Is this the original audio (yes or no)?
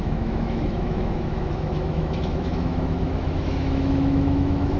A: no